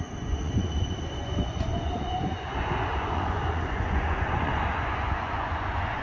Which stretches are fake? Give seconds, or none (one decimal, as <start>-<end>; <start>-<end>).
0.0-6.0